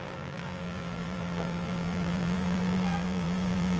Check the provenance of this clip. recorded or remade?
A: remade